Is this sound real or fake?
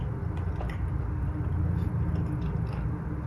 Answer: real